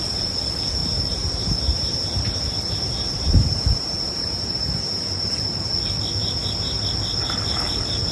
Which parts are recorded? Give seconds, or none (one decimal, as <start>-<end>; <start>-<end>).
0.0-0.8; 5.7-6.2; 6.8-8.1